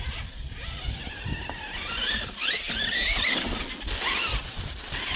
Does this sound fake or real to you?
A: real